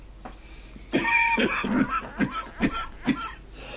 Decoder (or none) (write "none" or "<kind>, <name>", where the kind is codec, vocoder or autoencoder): none